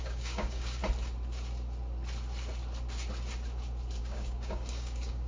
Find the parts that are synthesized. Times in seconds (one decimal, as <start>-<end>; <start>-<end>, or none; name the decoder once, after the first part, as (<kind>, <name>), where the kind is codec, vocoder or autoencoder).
0.0-0.8 (codec, DAC); 4.0-5.3

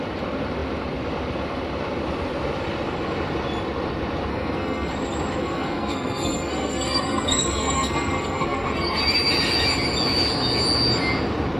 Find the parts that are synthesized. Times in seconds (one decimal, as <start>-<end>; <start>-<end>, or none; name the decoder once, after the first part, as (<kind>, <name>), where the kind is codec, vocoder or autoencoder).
4.3-4.9 (codec, SNAC); 5.4-9.0